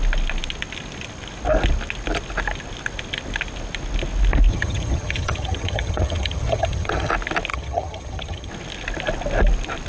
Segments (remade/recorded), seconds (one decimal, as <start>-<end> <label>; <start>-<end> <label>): 0.0-4.5 recorded; 4.5-7.1 remade; 7.1-7.5 recorded; 7.5-8.5 remade; 8.5-9.9 recorded